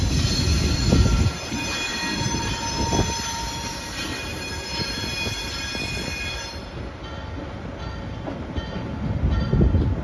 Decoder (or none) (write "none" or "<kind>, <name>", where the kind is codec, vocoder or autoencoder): none